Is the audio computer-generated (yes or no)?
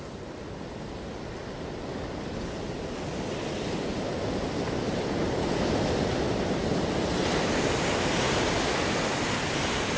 no